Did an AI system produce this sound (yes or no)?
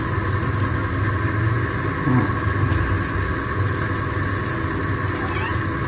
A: no